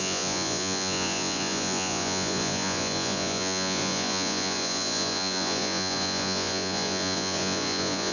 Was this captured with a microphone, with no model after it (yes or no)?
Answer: no